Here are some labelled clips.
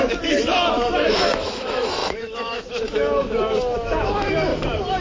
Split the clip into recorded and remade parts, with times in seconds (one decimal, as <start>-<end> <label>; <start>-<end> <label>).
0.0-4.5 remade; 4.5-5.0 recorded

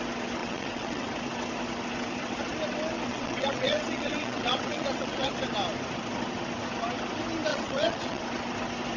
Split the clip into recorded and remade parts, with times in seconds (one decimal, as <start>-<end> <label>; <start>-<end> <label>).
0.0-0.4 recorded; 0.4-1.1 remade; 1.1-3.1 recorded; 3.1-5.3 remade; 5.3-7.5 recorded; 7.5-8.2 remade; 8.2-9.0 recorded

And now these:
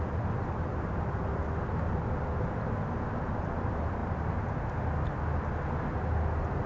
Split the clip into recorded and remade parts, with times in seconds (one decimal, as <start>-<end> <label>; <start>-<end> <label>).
0.0-6.7 recorded